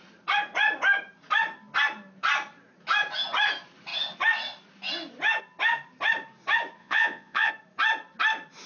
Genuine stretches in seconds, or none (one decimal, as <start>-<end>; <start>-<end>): 0.0-6.8; 7.5-8.7